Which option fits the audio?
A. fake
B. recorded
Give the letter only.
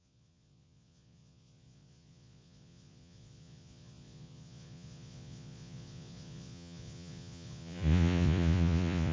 A